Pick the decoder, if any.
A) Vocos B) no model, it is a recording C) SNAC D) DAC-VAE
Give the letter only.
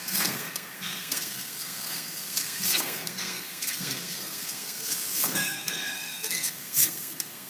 C